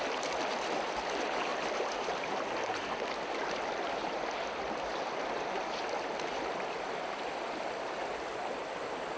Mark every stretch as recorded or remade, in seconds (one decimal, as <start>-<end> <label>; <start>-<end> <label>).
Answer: 0.0-9.2 remade